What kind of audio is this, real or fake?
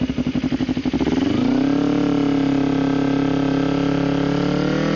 real